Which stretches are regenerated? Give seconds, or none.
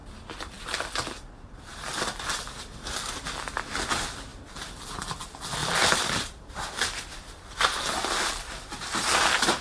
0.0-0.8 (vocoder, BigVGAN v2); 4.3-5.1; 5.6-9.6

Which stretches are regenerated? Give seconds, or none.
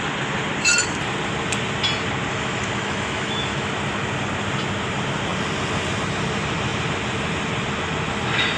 2.3-3.7 (autoencoder, DAC-VAE)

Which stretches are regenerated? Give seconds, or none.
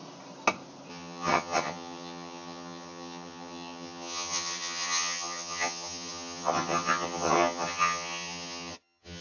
0.9-9.2 (vocoder, HiFi-GAN)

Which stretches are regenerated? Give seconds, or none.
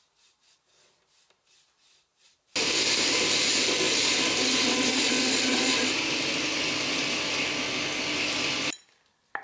none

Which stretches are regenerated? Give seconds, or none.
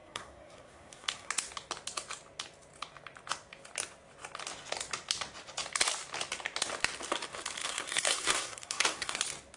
0.0-1.3 (codec, SNAC); 7.6-9.2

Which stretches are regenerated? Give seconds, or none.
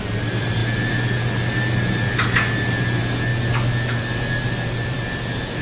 none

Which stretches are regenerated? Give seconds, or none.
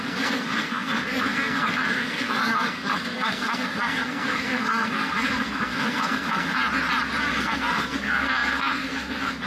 0.0-6.6 (codec, SNAC); 7.2-9.5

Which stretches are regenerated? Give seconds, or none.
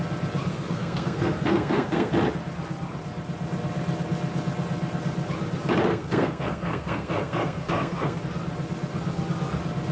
0.5-2.1 (codec, SNAC); 5.9-8.2